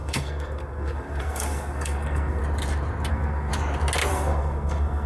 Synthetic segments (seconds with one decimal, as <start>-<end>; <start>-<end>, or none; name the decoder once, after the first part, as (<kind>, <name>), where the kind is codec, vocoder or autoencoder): 0.0-2.4 (codec, SNAC); 3.1-3.5; 4.1-5.1